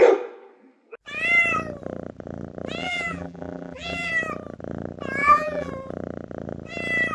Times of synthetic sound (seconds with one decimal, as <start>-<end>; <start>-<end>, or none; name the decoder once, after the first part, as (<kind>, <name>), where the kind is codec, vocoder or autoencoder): 2.8-4.1 (vocoder, BigVGAN v2); 5.2-5.7

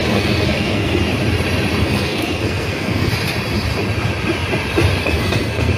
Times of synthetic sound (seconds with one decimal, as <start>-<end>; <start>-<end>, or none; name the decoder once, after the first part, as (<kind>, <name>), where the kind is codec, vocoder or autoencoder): 0.0-1.0 (codec, SNAC); 1.8-3.1; 5.0-5.8

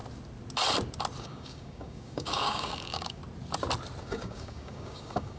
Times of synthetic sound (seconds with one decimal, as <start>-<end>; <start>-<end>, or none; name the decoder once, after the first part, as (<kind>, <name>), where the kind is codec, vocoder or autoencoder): 1.2-3.2 (codec, DAC); 4.0-5.4

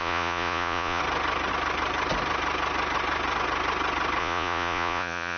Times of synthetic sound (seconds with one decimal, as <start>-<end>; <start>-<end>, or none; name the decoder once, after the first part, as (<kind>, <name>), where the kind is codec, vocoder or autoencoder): 0.0-1.0 (vocoder, Vocos); 4.2-5.4

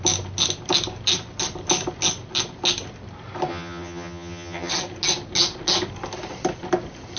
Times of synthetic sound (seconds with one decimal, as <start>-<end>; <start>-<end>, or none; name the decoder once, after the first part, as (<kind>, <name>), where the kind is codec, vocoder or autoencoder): 3.5-4.7 (vocoder, HiFi-GAN)

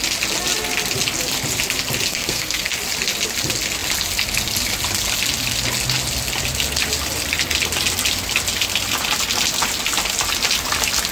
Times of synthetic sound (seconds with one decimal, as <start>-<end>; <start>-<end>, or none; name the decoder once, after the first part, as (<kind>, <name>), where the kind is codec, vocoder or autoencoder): 2.1-2.8 (codec, SNAC)